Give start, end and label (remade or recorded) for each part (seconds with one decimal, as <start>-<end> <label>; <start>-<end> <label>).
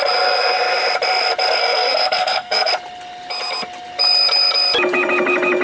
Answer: 0.0-1.6 recorded; 1.6-2.7 remade; 2.7-5.6 recorded